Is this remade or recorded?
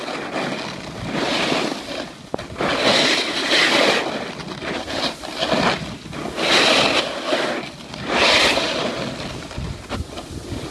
recorded